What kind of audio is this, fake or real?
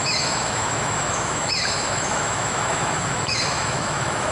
fake